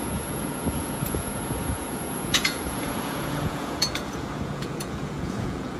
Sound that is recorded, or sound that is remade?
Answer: remade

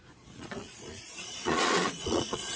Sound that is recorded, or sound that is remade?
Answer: remade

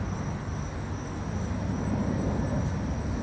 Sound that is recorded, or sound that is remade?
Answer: recorded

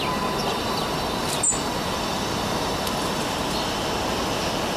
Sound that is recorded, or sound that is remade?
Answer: recorded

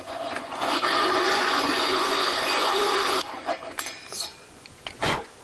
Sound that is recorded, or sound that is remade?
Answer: remade